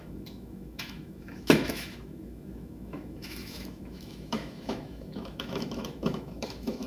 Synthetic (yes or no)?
yes